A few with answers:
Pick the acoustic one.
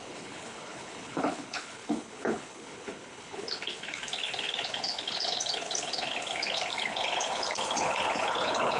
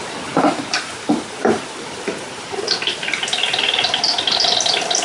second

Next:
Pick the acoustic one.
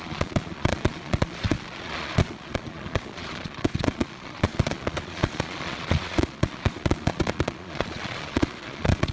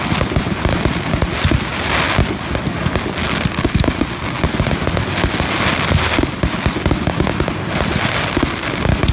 second